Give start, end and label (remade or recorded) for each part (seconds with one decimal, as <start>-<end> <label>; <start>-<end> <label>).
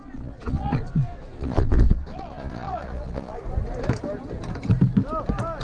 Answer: 0.0-3.4 remade; 3.4-5.6 recorded